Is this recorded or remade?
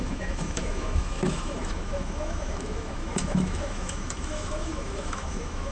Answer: remade